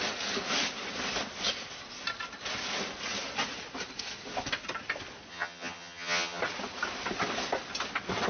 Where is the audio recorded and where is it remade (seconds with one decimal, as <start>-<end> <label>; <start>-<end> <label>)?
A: 0.0-5.3 recorded; 5.3-6.4 remade; 6.4-8.3 recorded